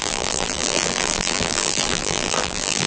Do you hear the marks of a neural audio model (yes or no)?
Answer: yes